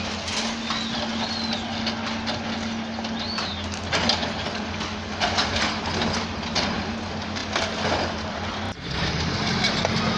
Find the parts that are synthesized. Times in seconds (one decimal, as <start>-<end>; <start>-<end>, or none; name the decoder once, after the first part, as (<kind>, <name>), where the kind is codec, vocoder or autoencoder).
none